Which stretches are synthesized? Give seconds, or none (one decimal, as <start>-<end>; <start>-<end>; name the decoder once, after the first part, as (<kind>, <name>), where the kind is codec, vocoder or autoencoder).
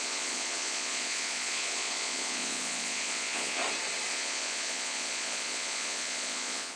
0.0-3.6 (vocoder, Vocos); 4.1-6.8